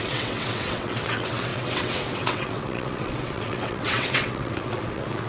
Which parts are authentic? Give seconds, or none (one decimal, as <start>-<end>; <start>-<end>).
none